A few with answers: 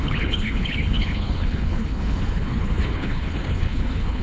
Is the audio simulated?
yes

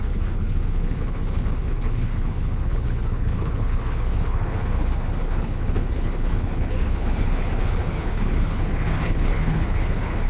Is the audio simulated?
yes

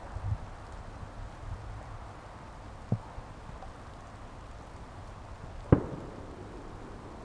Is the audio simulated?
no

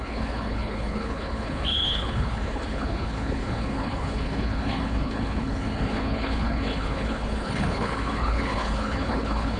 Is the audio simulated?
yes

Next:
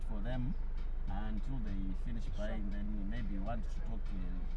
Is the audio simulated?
no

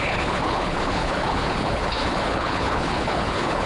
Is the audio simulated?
yes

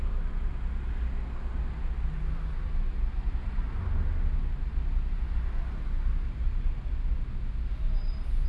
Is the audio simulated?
no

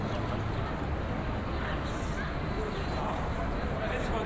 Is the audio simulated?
no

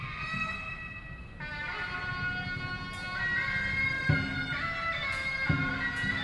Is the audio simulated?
no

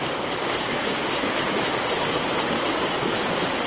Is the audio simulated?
no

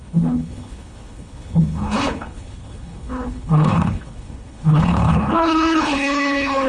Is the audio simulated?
yes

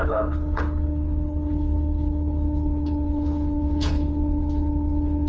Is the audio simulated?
yes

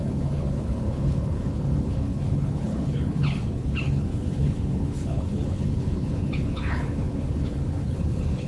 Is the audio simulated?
yes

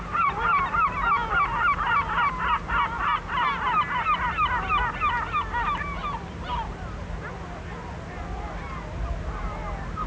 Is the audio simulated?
no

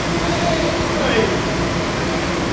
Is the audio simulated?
no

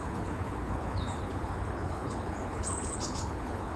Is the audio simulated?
yes